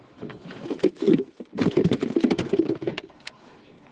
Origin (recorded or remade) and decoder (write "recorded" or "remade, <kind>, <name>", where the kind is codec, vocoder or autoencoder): remade, codec, SNAC